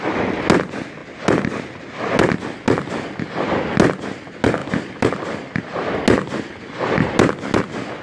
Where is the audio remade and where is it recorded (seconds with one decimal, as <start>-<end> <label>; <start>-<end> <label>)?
0.0-8.0 recorded